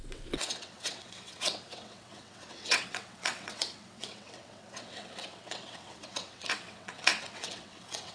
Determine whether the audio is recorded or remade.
remade